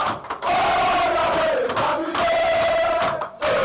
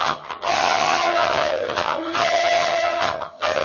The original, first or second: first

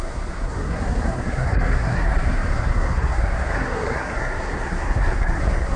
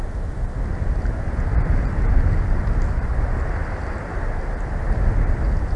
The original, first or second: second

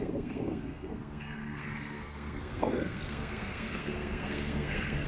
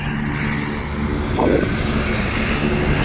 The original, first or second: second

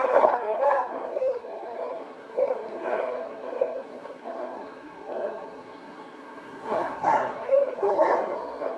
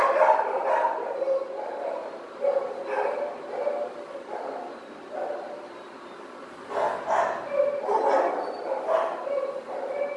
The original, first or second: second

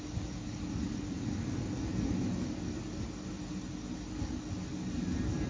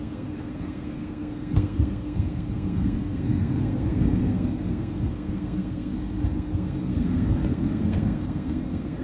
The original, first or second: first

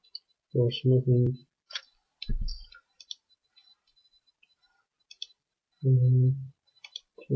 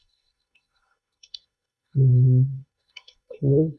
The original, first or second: first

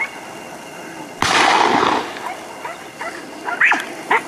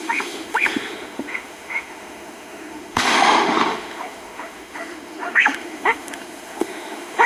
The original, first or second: first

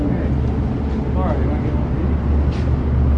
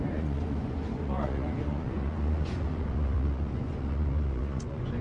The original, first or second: first